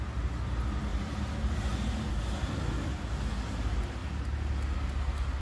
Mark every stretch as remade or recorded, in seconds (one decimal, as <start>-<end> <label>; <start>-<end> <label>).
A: 0.0-0.9 recorded; 0.9-2.1 remade; 2.1-4.0 recorded; 4.0-4.5 remade; 4.5-5.4 recorded